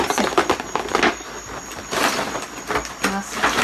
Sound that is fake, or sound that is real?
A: real